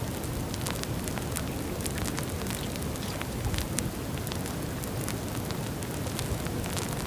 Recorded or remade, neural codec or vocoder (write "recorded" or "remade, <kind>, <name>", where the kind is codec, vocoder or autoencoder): recorded